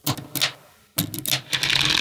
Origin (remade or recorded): recorded